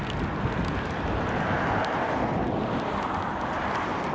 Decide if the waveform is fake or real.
real